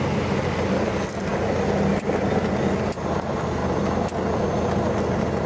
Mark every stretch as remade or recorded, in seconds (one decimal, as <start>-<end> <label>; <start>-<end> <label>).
0.0-5.5 recorded